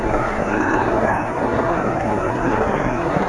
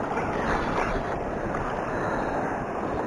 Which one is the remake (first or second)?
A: first